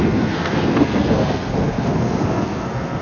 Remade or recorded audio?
remade